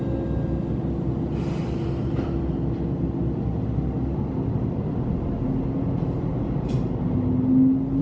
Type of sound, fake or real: real